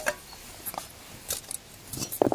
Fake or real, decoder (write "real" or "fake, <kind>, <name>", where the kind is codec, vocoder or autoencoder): real